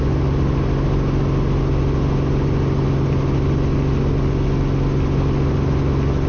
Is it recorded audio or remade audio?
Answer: recorded